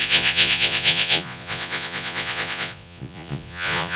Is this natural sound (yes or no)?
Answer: no